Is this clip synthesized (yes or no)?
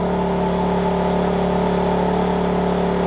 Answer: no